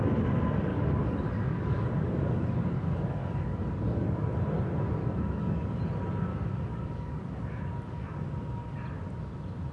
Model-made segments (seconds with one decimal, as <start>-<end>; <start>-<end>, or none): 0.7-4.3; 5.0-5.8; 6.3-8.2